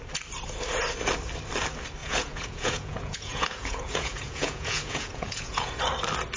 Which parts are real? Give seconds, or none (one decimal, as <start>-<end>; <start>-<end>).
0.0-2.0; 5.8-6.4